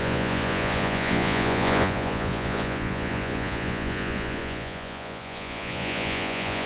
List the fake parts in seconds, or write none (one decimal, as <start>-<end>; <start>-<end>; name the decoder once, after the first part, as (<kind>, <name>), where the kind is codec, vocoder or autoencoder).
0.0-6.7 (vocoder, Vocos)